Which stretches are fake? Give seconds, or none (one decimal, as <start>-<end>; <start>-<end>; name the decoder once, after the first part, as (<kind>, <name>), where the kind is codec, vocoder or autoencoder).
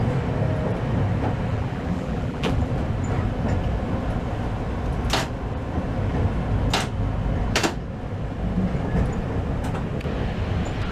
1.5-2.7 (vocoder, BigVGAN v2)